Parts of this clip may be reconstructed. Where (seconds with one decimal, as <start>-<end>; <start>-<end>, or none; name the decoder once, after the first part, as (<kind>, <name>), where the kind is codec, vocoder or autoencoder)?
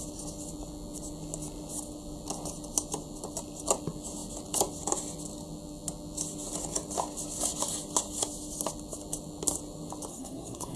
10.1-10.8 (codec, SNAC)